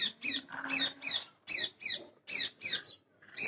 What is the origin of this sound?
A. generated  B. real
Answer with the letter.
B